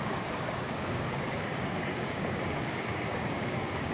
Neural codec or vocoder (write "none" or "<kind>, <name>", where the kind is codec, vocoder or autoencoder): codec, DAC